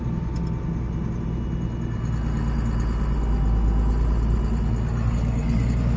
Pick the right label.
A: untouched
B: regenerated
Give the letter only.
A